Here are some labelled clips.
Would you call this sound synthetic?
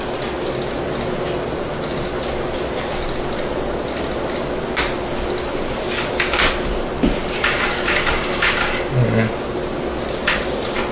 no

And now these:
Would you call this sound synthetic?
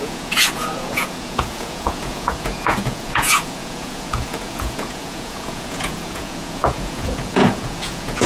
yes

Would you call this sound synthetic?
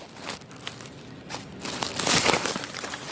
no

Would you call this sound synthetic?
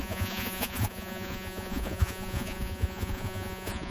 yes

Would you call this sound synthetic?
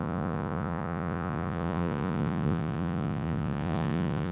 yes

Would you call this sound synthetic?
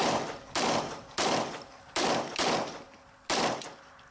no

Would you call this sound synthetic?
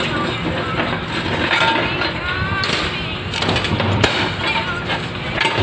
no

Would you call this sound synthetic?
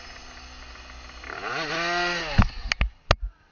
no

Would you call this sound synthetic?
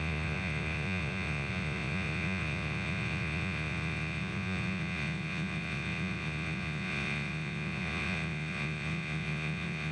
yes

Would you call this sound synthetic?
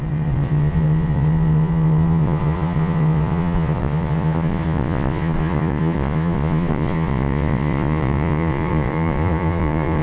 yes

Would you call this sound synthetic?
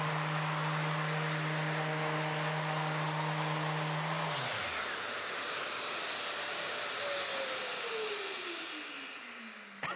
no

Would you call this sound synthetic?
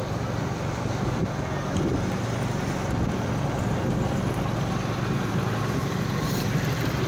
no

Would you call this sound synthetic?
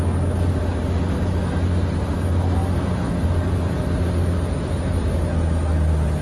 no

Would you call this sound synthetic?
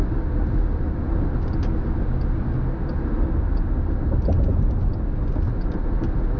no